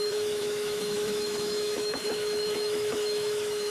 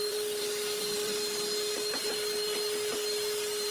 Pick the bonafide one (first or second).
second